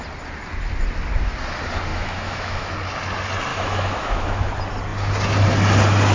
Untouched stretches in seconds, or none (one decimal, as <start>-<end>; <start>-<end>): 0.0-1.9; 2.7-3.5; 4.5-6.1